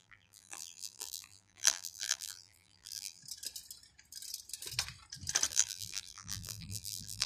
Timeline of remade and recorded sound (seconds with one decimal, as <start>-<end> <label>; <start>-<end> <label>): 0.0-3.2 remade; 3.2-5.5 recorded; 5.5-7.3 remade